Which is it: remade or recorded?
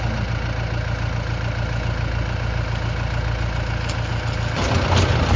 recorded